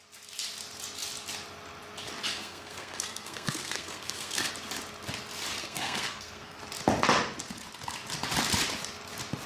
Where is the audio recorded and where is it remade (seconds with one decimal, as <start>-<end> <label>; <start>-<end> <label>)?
0.0-2.3 recorded; 2.3-4.5 remade; 4.5-5.6 recorded; 5.6-6.6 remade; 6.6-9.5 recorded